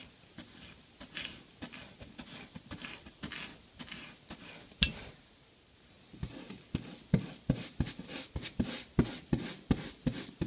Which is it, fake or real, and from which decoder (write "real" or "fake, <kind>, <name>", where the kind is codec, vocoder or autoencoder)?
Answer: real